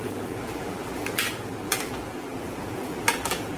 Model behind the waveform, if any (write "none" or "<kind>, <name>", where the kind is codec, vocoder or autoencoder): vocoder, BigVGAN v2